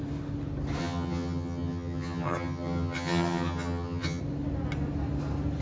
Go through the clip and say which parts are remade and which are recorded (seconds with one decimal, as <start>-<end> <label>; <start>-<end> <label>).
0.0-0.8 recorded; 0.8-4.2 remade; 4.2-5.6 recorded